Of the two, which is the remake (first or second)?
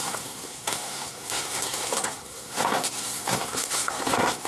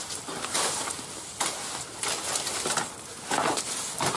first